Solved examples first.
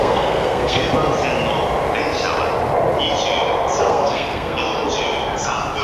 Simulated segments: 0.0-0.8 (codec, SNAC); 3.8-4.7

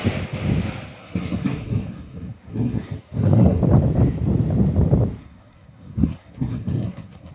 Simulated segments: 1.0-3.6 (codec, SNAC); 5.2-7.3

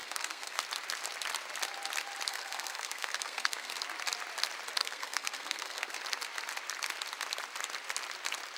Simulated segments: 0.0-0.6 (codec, SNAC); 2.3-3.7; 4.8-6.0

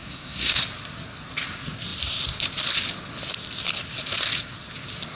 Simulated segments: 0.0-0.6 (codec, SNAC)

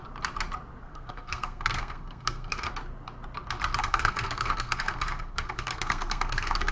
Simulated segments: 0.8-2.7 (codec, SNAC); 3.8-6.7

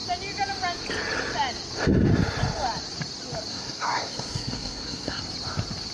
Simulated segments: 3.5-5.2 (codec, SNAC)

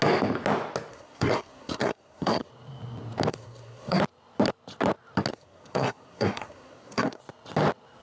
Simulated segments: 0.9-2.5 (codec, SNAC); 3.3-4.0; 5.3-7.2